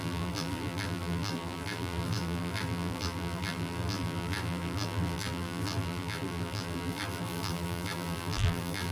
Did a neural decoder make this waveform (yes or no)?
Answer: yes